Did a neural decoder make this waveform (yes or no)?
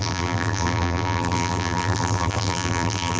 yes